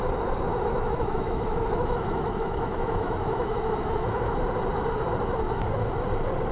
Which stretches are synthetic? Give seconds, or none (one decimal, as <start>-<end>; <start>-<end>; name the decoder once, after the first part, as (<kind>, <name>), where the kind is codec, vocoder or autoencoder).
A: 0.5-4.4 (autoencoder, DAC-VAE)